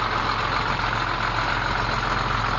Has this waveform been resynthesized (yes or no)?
no